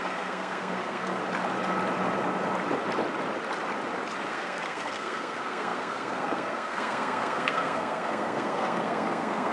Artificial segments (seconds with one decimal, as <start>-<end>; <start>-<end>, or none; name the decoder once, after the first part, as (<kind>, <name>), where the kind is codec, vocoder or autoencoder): 0.0-1.2 (codec, SNAC); 4.3-9.5